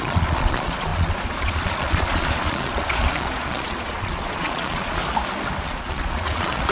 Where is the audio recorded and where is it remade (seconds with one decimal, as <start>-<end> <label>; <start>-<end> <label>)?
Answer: 0.0-5.0 remade; 5.0-5.6 recorded; 5.6-6.7 remade